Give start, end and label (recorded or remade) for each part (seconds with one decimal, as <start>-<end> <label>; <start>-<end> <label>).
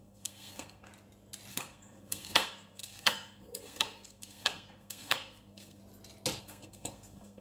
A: 0.0-0.9 remade; 0.9-1.5 recorded; 1.5-5.8 remade; 5.8-6.4 recorded; 6.4-7.4 remade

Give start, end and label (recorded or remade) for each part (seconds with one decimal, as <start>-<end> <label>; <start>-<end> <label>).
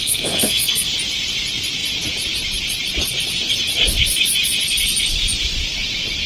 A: 0.0-0.9 remade; 0.9-6.3 recorded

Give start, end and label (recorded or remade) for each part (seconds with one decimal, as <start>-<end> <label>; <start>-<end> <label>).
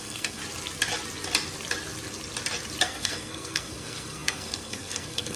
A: 0.0-0.4 remade; 0.4-2.8 recorded; 2.8-5.4 remade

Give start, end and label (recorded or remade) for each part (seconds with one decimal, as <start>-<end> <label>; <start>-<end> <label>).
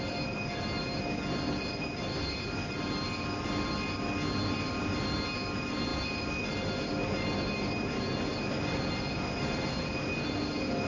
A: 0.0-10.9 recorded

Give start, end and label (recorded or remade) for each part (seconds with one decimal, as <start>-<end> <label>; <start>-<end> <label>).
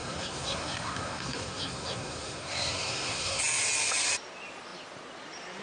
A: 0.0-3.4 remade; 3.4-5.6 recorded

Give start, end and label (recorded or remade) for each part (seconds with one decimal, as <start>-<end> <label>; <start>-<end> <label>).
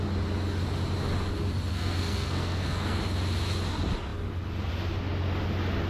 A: 0.0-1.7 recorded; 1.7-3.0 remade; 3.0-5.9 recorded